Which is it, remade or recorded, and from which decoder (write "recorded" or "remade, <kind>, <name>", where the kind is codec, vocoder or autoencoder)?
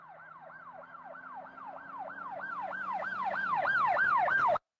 remade, vocoder, BigVGAN v2